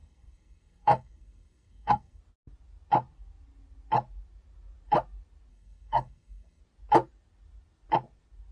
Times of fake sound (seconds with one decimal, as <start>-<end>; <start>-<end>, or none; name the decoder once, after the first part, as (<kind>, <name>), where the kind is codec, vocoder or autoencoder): 0.0-2.2 (codec, SNAC); 5.5-6.6